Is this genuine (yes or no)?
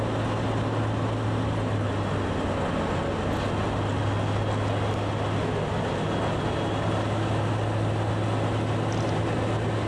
yes